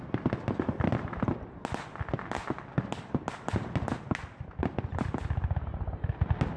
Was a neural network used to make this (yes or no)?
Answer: no